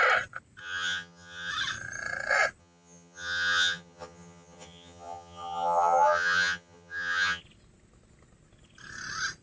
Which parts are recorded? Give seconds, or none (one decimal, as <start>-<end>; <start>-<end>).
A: 0.0-0.6; 1.5-2.6; 7.4-9.4